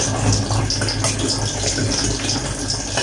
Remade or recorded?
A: recorded